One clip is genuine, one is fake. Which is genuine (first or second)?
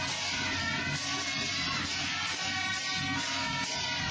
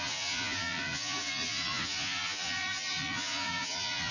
first